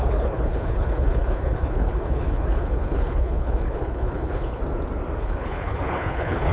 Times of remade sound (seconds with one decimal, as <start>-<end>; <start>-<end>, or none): 0.0-4.6; 5.2-6.5